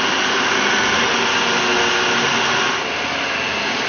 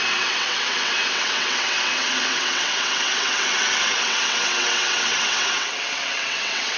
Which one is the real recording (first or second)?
first